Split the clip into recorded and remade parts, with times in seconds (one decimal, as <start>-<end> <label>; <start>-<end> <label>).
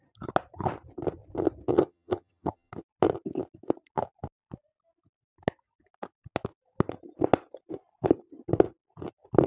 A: 0.0-1.7 recorded; 1.7-2.7 remade; 2.7-9.5 recorded